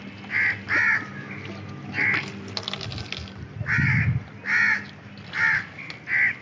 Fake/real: real